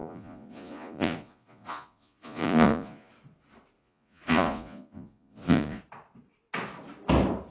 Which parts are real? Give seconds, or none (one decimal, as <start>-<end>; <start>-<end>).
3.1-3.8; 5.8-7.5